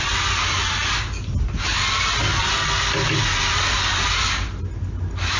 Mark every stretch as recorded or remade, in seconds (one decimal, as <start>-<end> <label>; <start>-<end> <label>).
0.0-5.4 recorded

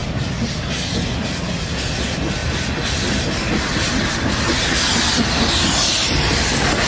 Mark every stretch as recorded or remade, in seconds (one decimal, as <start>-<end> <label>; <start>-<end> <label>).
0.0-6.9 remade

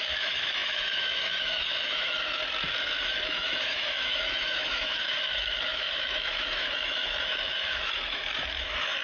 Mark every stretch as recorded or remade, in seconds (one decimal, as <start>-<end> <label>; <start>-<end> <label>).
0.0-2.4 remade; 2.4-3.0 recorded; 3.0-9.0 remade

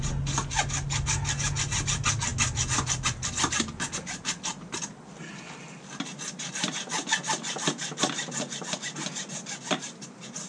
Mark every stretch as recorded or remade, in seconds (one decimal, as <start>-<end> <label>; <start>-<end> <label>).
0.0-10.5 recorded

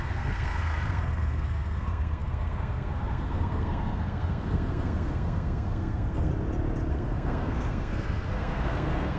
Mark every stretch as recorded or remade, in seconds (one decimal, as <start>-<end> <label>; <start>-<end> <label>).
0.0-6.3 remade; 6.3-6.9 recorded; 6.9-9.2 remade

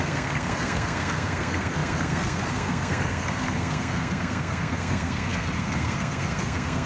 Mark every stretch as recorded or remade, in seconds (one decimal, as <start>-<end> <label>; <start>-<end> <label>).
0.0-6.9 remade

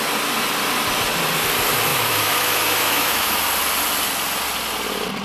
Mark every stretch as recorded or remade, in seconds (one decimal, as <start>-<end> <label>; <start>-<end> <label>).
0.0-1.9 recorded; 1.9-3.4 remade; 3.4-5.2 recorded